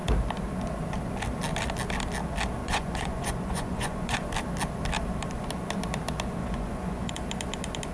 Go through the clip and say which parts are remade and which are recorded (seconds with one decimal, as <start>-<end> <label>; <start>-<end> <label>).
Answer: 0.0-2.6 recorded; 2.6-4.3 remade; 4.3-6.4 recorded; 6.4-7.1 remade; 7.1-7.9 recorded